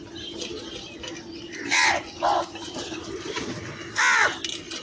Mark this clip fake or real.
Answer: real